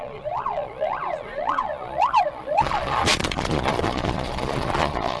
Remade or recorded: remade